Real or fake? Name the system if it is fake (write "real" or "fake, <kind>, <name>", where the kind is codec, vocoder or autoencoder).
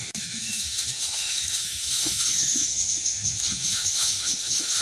fake, autoencoder, DAC-VAE